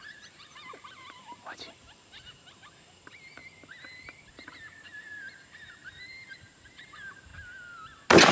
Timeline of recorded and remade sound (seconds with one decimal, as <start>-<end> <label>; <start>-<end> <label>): 0.0-3.4 remade; 3.4-4.3 recorded; 4.3-7.3 remade; 7.3-8.3 recorded